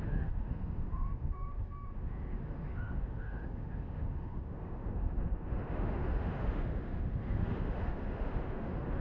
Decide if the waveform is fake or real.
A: fake